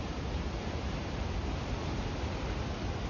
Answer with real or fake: real